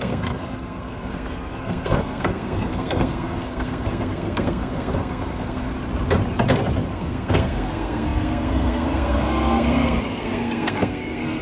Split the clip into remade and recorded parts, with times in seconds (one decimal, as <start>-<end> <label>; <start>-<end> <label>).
0.0-5.7 remade; 5.7-6.9 recorded; 6.9-11.4 remade